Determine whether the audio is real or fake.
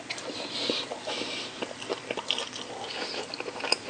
real